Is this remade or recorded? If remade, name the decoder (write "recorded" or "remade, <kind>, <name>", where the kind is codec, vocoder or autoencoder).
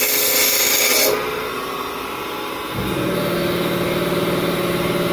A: recorded